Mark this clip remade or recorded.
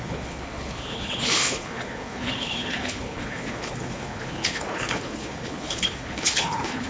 remade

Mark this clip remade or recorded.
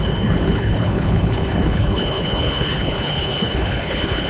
remade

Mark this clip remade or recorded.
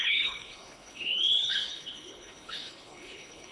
remade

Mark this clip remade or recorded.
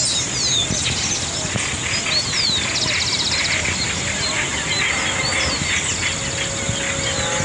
recorded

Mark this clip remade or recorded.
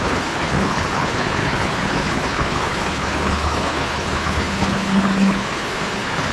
remade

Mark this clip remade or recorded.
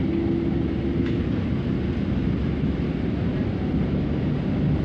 recorded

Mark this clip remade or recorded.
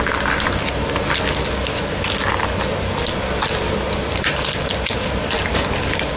recorded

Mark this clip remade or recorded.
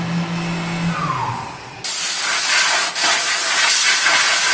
recorded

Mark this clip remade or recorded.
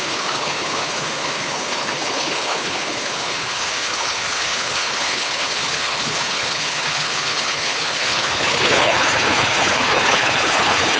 remade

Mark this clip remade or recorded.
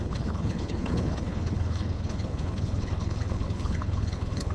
remade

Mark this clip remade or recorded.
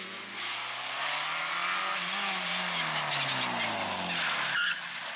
recorded